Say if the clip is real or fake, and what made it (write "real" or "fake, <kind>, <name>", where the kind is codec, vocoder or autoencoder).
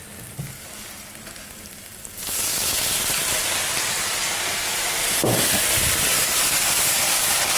real